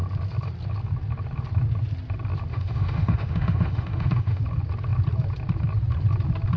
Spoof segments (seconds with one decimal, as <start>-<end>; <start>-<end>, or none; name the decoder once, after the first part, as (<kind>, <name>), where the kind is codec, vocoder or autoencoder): 2.5-4.4 (autoencoder, DAC-VAE)